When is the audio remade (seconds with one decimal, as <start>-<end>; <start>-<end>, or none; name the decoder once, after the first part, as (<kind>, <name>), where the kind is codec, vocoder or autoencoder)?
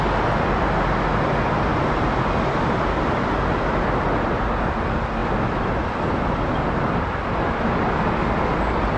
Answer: none